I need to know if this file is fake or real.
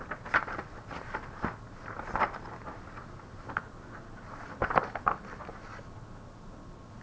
real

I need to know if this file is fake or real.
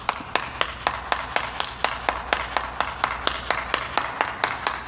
real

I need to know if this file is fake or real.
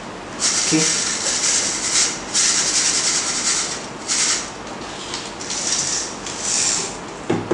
real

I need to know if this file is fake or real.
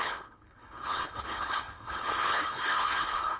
fake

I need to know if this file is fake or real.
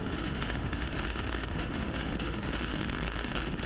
fake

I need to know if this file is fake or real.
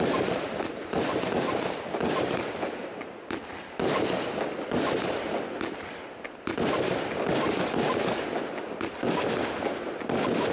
real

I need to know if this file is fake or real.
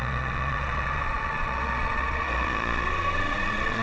fake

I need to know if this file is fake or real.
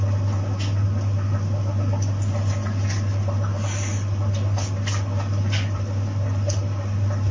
real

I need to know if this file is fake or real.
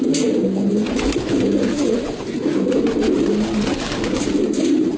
real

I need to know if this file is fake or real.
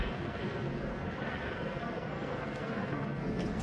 fake